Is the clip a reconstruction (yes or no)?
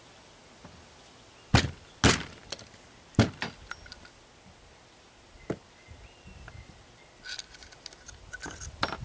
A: no